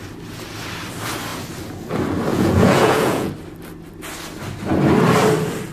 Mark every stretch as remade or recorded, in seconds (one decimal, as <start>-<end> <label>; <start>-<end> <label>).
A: 0.0-2.3 recorded; 2.3-3.3 remade; 3.3-5.7 recorded